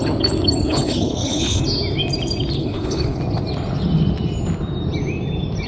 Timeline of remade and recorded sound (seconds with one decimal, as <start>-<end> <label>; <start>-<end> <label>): 0.0-0.6 recorded; 0.6-1.6 remade; 1.6-2.6 recorded; 2.6-3.2 remade; 3.2-5.7 recorded